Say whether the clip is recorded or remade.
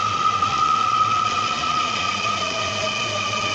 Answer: remade